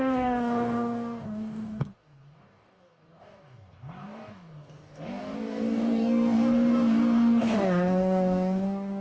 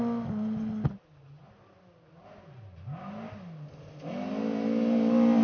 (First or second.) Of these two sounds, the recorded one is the second